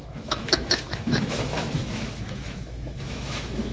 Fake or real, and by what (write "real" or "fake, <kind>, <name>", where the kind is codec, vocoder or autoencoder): fake, autoencoder, DAC-VAE